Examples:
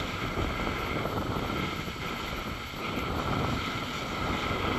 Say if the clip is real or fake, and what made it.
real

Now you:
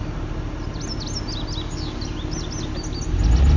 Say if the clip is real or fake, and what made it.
real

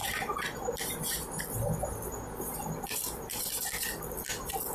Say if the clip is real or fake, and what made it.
real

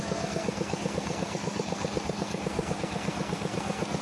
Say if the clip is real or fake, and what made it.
fake, codec, SNAC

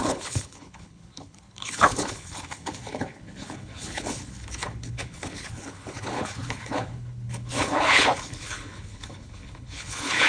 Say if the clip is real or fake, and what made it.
fake, codec, HILCodec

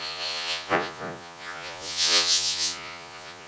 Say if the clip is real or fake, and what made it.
fake, vocoder, Vocos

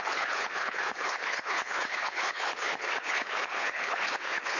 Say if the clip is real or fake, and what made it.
fake, codec, HILCodec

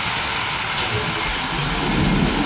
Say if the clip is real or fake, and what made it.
real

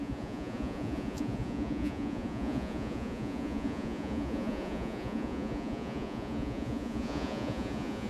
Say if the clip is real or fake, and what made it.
fake, vocoder, Vocos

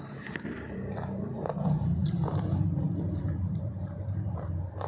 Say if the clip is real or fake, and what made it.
fake, vocoder, BigVGAN v2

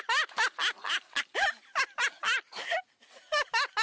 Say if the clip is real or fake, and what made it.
real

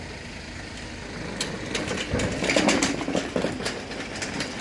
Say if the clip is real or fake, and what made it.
real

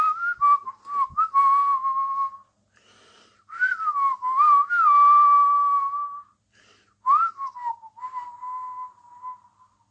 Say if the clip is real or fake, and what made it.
real